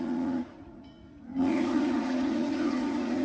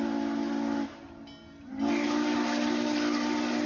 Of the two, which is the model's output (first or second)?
first